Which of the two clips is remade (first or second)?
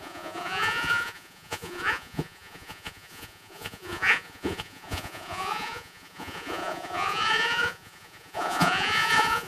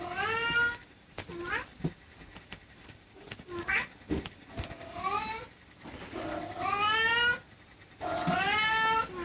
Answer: first